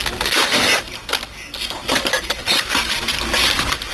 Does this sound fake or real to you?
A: real